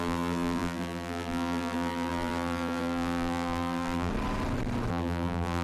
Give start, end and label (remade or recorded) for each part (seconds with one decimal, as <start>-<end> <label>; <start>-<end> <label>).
0.0-4.1 remade; 4.1-4.9 recorded; 4.9-5.6 remade